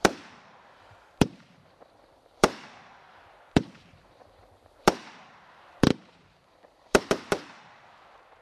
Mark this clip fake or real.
fake